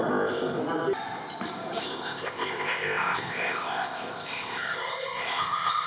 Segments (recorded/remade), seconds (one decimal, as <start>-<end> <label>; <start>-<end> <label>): 0.0-0.6 remade; 0.6-1.8 recorded; 1.8-5.9 remade